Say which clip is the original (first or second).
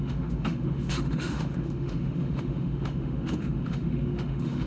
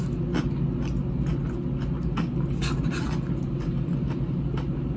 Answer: second